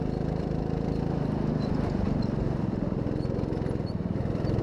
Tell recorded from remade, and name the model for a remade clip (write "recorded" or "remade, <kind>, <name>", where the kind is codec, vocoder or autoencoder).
remade, vocoder, BigVGAN v2